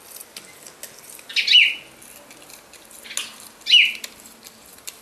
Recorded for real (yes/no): yes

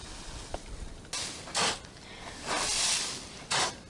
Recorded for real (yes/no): yes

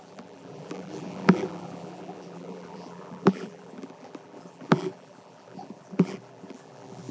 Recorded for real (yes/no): no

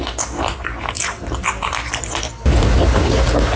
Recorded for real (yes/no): yes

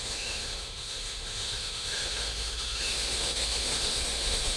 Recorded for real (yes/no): no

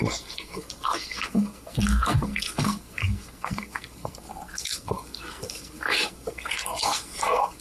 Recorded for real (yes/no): no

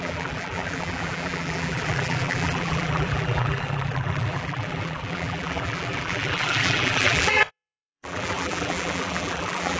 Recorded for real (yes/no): no